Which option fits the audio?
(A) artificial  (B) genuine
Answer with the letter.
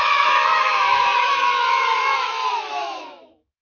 A